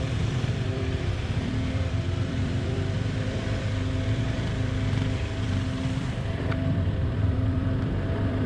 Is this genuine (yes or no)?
no